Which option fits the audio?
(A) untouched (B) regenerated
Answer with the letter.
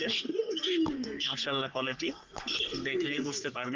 B